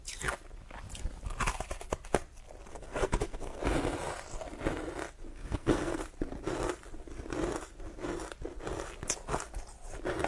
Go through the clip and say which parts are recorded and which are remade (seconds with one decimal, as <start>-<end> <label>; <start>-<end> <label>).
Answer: 0.0-2.7 recorded; 2.7-3.6 remade; 3.6-5.3 recorded; 5.3-6.0 remade; 6.0-10.3 recorded